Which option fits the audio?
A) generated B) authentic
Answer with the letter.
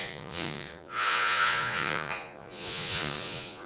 A